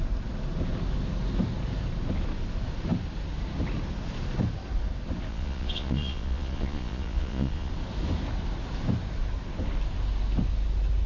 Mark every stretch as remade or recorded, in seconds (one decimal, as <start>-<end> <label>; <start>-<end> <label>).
0.0-5.3 recorded; 5.3-7.7 remade; 7.7-11.1 recorded